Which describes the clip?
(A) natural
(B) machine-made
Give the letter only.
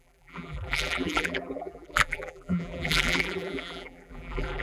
B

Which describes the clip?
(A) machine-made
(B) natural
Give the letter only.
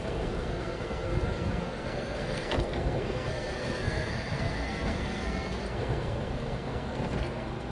A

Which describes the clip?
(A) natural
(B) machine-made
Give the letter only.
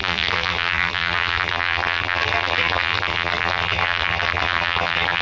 B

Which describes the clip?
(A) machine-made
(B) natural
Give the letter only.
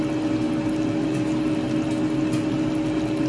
B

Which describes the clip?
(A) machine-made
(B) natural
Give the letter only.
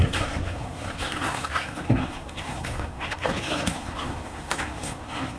A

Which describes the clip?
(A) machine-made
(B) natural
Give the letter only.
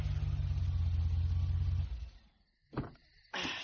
B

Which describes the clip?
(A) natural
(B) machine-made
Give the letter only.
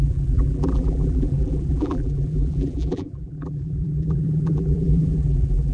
B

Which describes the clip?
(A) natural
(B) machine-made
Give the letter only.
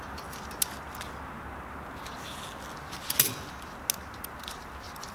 A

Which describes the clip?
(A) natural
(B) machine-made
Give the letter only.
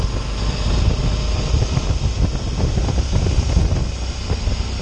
A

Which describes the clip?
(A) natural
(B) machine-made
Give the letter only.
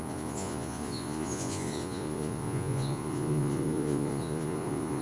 B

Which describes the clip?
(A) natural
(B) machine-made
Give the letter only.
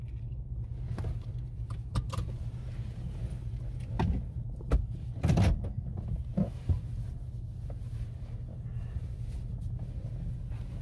A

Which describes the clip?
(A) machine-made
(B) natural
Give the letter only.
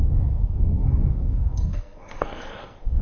A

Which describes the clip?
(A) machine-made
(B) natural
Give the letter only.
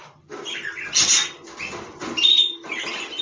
B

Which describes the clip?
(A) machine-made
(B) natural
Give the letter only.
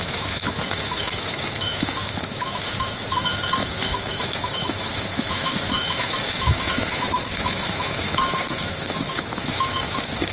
A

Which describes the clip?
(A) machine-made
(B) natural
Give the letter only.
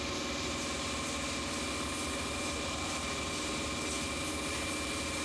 B